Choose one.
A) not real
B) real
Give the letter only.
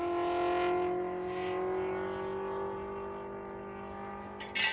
B